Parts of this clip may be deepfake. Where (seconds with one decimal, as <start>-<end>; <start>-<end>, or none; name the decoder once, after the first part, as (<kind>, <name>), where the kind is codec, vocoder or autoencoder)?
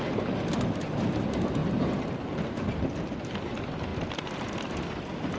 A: none